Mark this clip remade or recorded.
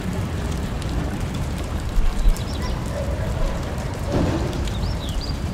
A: remade